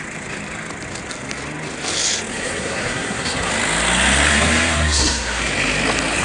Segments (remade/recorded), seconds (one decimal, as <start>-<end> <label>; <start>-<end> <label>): 0.0-2.3 recorded; 2.3-3.5 remade; 3.5-4.3 recorded; 4.3-5.5 remade; 5.5-6.2 recorded